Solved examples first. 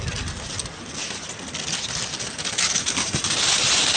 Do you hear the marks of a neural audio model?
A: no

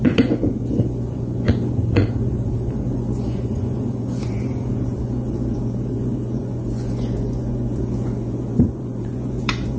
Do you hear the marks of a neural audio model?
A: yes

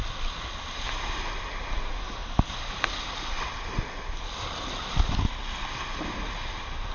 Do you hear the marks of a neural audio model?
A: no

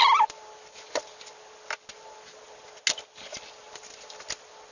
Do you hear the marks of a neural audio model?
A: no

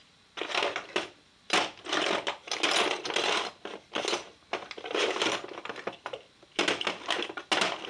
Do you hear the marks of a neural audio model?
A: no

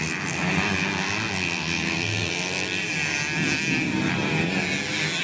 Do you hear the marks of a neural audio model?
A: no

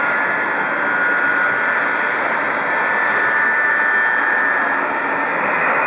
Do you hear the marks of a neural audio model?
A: no